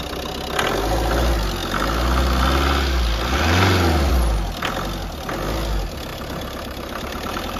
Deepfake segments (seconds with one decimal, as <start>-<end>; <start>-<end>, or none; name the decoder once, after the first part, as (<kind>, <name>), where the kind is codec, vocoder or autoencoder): 6.1-7.6 (vocoder, BigVGAN v2)